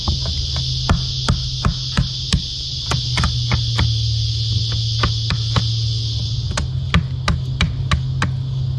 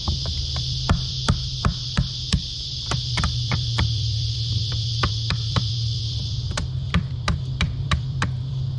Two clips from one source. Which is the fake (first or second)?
second